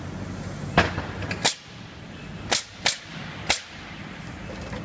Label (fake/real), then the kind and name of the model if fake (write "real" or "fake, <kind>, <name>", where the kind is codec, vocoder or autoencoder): real